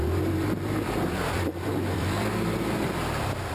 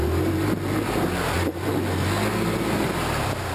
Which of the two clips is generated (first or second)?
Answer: first